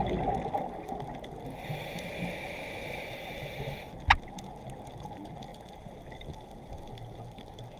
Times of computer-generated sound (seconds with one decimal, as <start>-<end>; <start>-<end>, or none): none